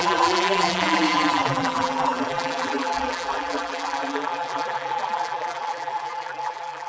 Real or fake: fake